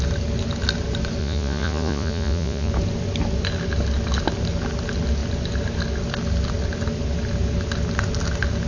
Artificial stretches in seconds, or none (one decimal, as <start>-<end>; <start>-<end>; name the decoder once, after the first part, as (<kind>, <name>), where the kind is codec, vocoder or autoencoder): 1.2-2.7 (vocoder, Vocos)